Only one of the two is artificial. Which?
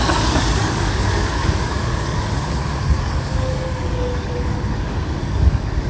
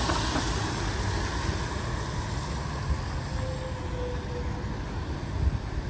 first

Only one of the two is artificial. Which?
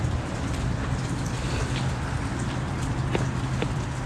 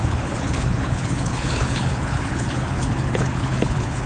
second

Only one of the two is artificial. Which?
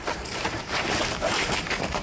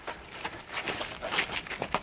first